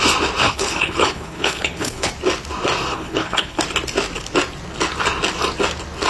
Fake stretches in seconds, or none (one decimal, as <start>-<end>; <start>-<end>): 0.4-2.1; 2.9-3.6

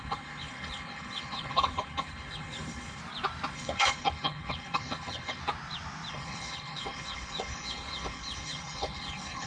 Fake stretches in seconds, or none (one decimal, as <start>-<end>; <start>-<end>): 0.0-3.0; 3.5-5.4; 6.1-9.5